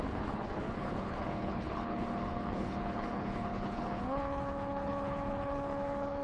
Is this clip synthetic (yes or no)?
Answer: yes